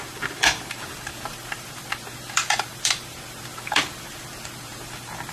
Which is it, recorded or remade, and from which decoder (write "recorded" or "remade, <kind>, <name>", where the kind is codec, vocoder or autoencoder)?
remade, vocoder, BigVGAN v2